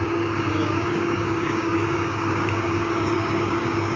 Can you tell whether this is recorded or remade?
remade